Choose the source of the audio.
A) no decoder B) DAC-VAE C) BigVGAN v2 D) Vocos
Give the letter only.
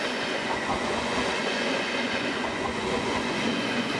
D